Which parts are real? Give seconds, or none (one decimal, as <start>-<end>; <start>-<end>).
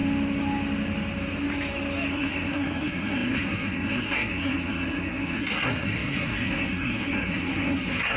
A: 0.0-2.1